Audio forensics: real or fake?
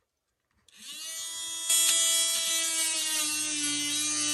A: real